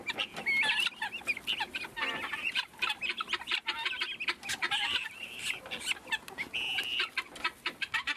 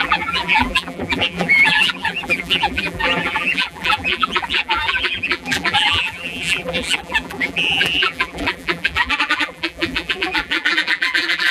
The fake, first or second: second